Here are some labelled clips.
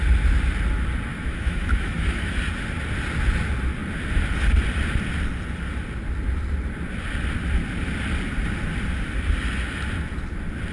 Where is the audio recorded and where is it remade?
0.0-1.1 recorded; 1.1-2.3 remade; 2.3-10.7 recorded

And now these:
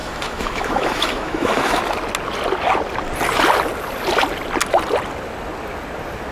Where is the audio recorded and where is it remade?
0.0-1.8 remade; 1.8-6.3 recorded

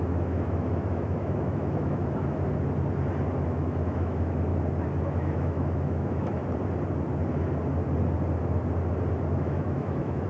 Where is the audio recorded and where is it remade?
0.0-2.0 remade; 2.0-3.5 recorded; 3.5-4.5 remade; 4.5-5.0 recorded; 5.0-6.4 remade; 6.4-9.3 recorded; 9.3-10.3 remade

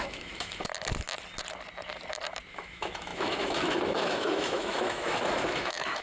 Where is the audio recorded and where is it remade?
0.0-0.7 remade; 0.7-2.5 recorded; 2.5-6.0 remade

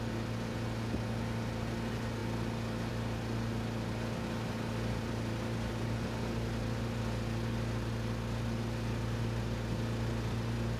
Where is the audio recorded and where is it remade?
0.0-10.8 recorded